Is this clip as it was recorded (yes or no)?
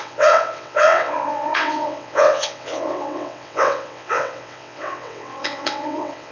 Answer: no